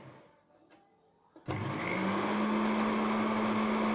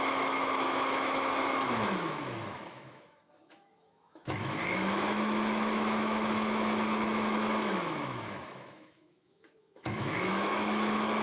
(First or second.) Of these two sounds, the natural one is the first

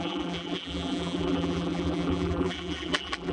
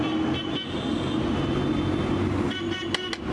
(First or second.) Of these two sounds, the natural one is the second